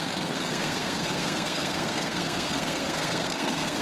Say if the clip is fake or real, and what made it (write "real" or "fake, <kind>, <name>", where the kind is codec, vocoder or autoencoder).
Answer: fake, codec, SNAC